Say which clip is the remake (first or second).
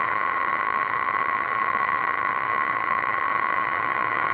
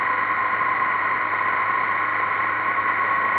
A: first